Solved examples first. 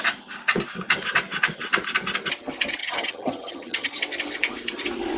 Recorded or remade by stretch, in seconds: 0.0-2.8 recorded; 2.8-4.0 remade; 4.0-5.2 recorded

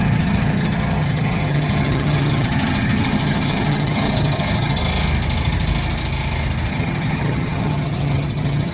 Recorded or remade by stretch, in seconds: 0.0-4.8 remade; 4.8-6.7 recorded; 6.7-8.7 remade

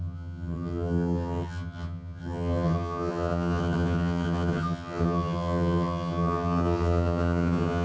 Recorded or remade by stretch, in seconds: 0.0-7.8 remade

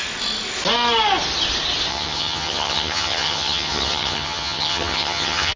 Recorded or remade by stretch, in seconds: 0.0-1.9 recorded; 1.9-5.6 remade

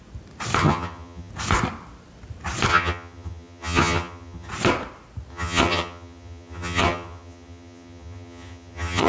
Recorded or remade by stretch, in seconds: 0.0-0.6 recorded; 0.6-1.3 remade; 1.3-2.7 recorded; 2.7-4.5 remade; 4.5-5.3 recorded; 5.3-9.1 remade

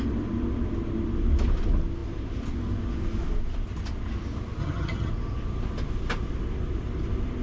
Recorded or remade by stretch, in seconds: 0.0-4.6 recorded; 4.6-5.1 remade; 5.1-7.4 recorded

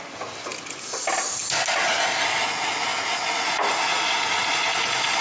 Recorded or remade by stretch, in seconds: 0.0-5.2 recorded